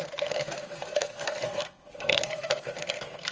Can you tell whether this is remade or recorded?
remade